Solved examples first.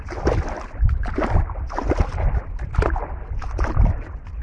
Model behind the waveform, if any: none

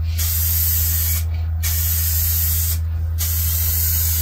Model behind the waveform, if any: none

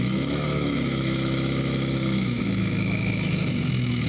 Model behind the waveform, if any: autoencoder, DAC-VAE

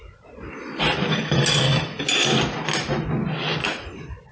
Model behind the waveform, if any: none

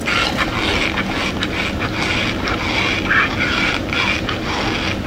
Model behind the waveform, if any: none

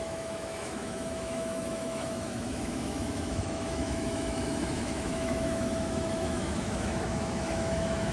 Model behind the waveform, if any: autoencoder, DAC-VAE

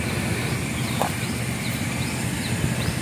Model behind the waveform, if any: none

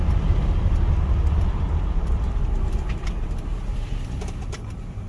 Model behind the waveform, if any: none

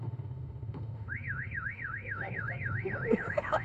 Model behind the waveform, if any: autoencoder, DAC-VAE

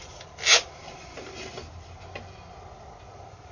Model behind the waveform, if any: none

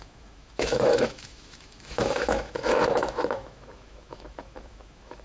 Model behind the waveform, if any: autoencoder, DAC-VAE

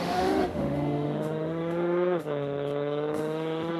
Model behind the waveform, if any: autoencoder, DAC-VAE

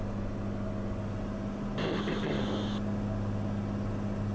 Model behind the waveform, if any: none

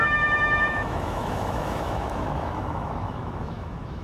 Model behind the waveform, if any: autoencoder, DAC-VAE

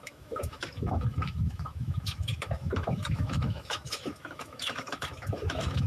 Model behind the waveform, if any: autoencoder, DAC-VAE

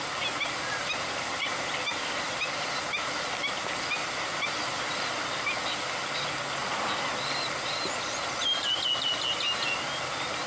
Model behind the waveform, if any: none